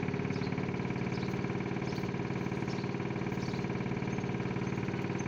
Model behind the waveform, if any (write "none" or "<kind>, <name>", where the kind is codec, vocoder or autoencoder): none